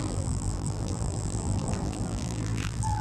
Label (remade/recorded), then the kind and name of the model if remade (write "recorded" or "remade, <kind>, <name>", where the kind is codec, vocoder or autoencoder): remade, vocoder, BigVGAN v2